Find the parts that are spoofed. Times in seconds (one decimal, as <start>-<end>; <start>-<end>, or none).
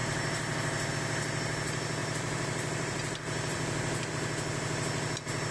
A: 2.0-4.1